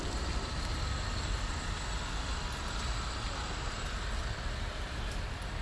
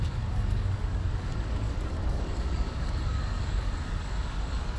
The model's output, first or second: second